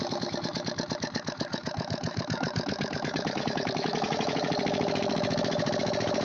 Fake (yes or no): yes